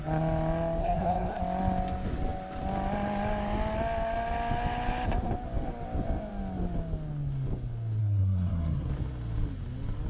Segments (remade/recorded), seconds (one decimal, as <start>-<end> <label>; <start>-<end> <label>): 0.0-0.8 recorded; 0.8-1.4 remade; 1.4-8.0 recorded; 8.0-8.9 remade; 8.9-10.1 recorded

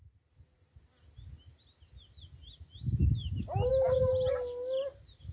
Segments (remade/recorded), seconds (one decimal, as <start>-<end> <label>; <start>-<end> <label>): 0.0-5.3 recorded

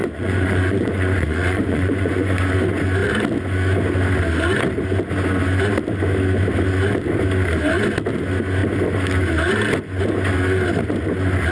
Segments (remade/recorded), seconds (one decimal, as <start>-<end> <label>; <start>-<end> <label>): 0.0-2.4 remade; 2.4-11.5 recorded

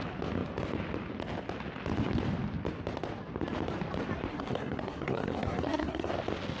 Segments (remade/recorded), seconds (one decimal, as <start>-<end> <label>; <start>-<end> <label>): 0.0-4.3 recorded; 4.3-6.1 remade; 6.1-6.6 recorded

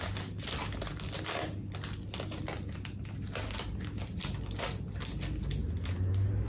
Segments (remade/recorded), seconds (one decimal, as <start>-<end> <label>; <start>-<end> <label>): 0.0-6.5 recorded